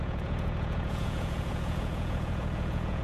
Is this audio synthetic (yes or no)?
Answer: yes